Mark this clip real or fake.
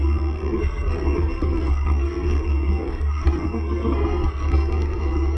fake